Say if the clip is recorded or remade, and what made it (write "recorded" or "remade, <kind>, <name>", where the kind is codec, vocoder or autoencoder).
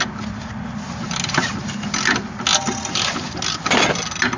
recorded